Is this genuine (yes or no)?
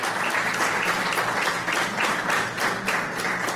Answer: no